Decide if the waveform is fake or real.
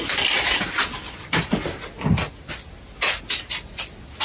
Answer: real